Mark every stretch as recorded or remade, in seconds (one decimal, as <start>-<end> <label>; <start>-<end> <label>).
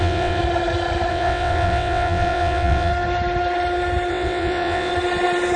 0.0-0.4 remade; 0.4-1.1 recorded; 1.1-2.9 remade; 2.9-4.1 recorded; 4.1-4.9 remade; 4.9-5.6 recorded